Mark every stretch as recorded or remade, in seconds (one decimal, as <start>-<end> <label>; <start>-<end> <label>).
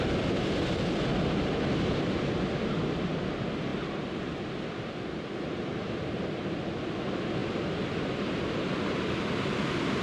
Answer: 0.0-10.0 recorded